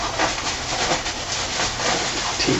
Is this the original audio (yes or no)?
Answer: yes